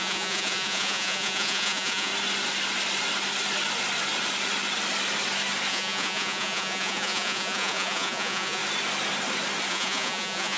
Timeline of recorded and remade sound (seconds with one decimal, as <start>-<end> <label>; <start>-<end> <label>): 0.0-2.1 remade; 2.1-5.7 recorded; 5.7-8.6 remade; 8.6-9.7 recorded; 9.7-10.6 remade